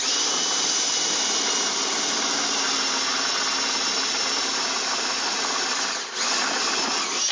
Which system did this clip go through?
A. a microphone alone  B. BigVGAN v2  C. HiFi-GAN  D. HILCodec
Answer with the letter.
A